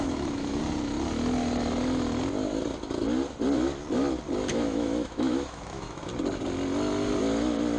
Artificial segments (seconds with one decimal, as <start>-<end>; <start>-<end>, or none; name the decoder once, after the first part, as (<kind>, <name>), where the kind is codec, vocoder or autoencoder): 0.0-0.6 (autoencoder, DAC-VAE); 4.5-6.1